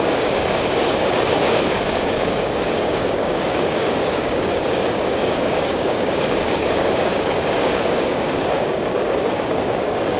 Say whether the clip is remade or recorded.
remade